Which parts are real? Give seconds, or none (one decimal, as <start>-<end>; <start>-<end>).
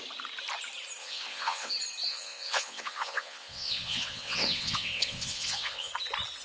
0.0-1.0; 1.7-2.1; 5.9-6.4